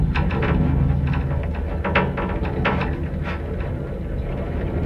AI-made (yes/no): no